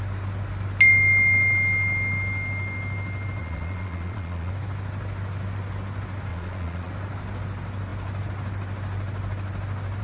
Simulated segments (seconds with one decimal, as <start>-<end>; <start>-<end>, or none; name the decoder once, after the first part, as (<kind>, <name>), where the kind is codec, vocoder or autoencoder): 3.4-4.5 (vocoder, Vocos); 6.3-6.9